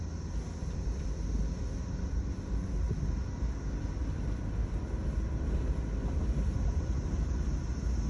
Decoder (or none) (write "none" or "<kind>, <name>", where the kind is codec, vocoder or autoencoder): none